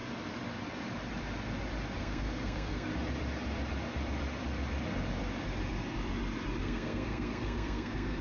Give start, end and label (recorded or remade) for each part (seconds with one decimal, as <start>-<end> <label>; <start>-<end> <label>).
0.0-2.0 recorded; 2.0-2.9 remade; 2.9-6.6 recorded; 6.6-8.2 remade